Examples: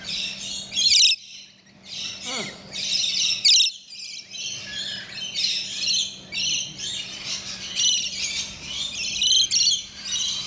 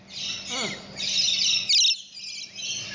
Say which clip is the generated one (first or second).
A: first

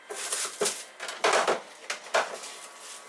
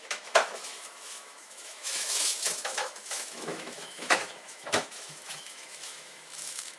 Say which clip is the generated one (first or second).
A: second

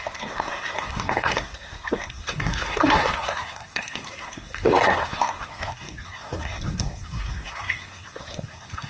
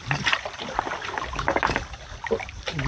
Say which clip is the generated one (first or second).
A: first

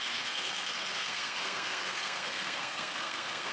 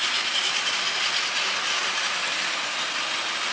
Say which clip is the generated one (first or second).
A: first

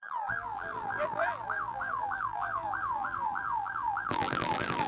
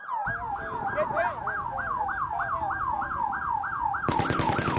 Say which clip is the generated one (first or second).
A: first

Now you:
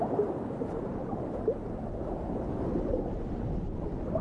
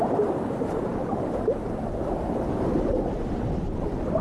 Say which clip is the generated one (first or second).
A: second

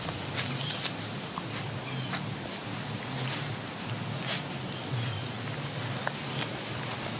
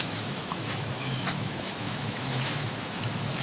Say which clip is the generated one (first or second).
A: second